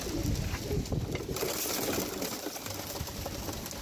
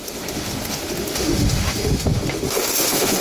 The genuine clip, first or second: first